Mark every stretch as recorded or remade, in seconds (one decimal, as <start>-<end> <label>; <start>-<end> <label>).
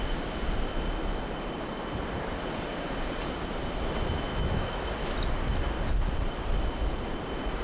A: 0.0-4.3 recorded; 4.3-4.9 remade; 4.9-7.6 recorded